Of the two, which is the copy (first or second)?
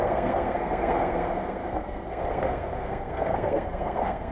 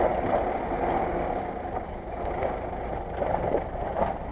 first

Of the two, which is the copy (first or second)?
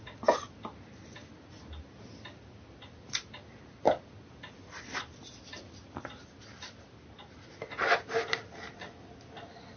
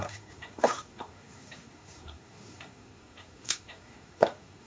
second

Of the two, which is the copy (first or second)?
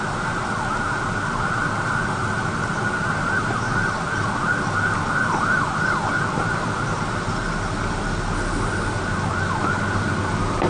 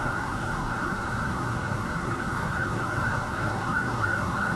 second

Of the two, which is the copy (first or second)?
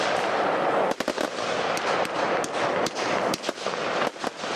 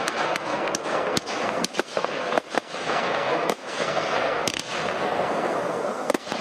second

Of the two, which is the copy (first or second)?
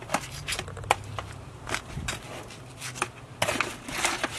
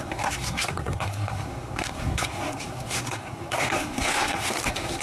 second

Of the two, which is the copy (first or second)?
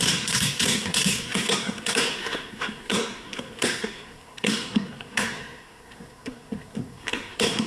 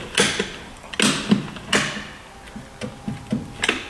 first